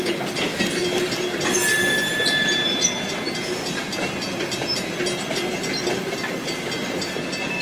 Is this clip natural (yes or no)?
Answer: yes